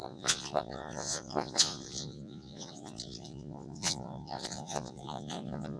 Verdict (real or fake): fake